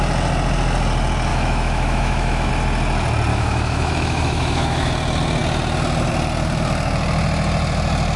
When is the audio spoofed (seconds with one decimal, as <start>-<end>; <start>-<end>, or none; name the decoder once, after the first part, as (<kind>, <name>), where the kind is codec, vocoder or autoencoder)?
1.3-2.5 (autoencoder, DAC-VAE); 3.3-4.9